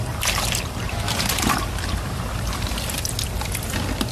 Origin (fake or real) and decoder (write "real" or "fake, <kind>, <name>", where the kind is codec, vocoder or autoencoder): fake, vocoder, BigVGAN v2